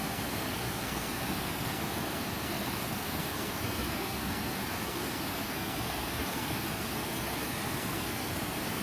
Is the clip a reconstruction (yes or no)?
yes